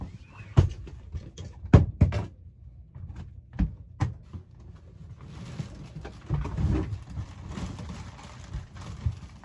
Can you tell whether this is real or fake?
real